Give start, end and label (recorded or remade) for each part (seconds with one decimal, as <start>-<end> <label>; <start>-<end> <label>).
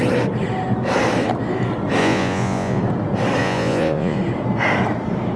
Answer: 0.0-2.0 recorded; 2.0-2.8 remade; 2.8-3.4 recorded; 3.4-4.2 remade; 4.2-5.4 recorded